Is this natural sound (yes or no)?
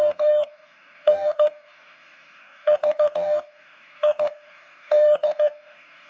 no